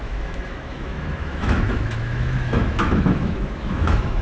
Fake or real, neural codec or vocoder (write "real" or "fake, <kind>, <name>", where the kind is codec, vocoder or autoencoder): fake, autoencoder, DAC-VAE